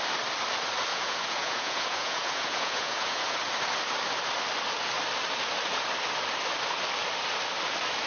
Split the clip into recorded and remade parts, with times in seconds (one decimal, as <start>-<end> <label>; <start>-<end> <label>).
0.0-0.9 recorded; 0.9-3.4 remade; 3.4-8.1 recorded